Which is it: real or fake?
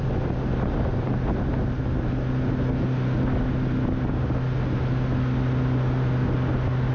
real